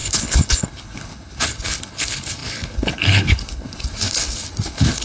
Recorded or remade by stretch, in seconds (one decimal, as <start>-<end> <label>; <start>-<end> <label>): 0.0-5.0 remade